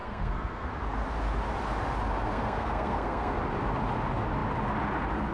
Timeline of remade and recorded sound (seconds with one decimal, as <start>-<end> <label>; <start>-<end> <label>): 0.0-0.7 remade; 0.7-2.3 recorded; 2.3-3.4 remade; 3.4-5.3 recorded